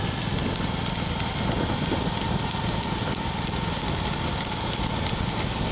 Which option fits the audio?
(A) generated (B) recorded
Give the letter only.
B